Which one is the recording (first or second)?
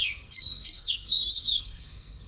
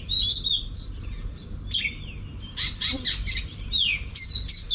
second